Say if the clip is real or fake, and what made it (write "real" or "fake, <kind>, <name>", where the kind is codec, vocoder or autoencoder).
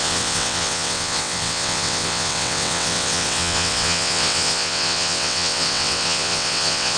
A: fake, vocoder, WaveNeXt